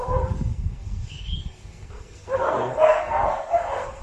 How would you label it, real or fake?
fake